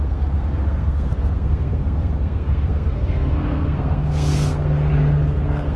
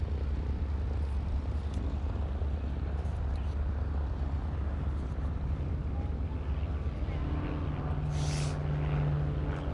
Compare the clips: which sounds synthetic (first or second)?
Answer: first